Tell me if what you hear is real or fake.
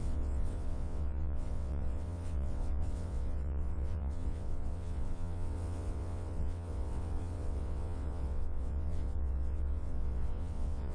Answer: fake